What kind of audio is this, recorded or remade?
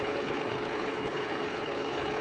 remade